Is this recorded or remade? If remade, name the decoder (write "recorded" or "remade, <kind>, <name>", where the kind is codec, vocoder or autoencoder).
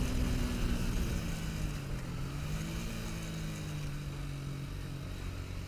recorded